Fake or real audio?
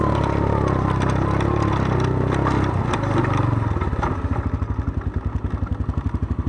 real